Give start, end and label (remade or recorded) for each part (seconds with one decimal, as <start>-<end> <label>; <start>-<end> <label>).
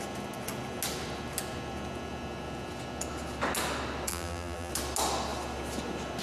0.0-4.1 recorded; 4.1-4.7 remade; 4.7-6.2 recorded